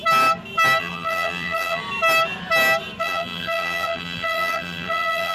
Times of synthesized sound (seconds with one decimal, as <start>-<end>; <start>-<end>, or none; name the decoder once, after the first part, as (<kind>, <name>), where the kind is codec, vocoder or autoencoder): 0.8-1.8 (vocoder, BigVGAN v2); 3.0-5.3